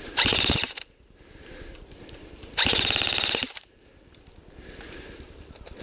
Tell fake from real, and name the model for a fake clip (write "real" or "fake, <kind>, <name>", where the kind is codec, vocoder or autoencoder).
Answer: fake, vocoder, BigVGAN v2